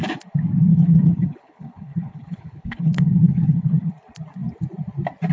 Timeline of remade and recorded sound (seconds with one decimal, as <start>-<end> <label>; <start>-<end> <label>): 0.0-0.7 recorded; 0.7-3.9 remade; 3.9-5.3 recorded